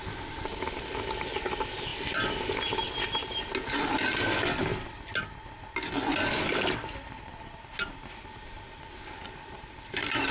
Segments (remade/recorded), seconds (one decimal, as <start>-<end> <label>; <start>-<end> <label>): 0.0-10.3 recorded